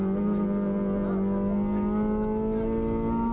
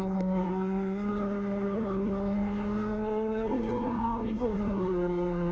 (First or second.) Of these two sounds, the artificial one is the second